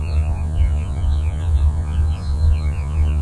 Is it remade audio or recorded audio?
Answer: remade